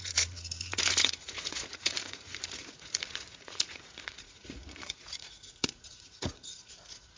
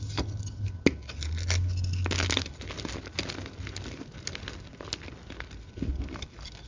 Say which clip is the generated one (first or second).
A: first